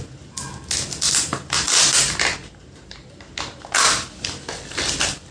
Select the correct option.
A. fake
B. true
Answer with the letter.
B